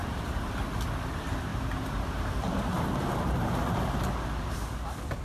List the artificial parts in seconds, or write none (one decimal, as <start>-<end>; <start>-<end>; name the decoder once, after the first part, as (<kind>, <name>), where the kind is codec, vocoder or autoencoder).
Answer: 0.0-0.5 (vocoder, BigVGAN v2); 1.5-4.6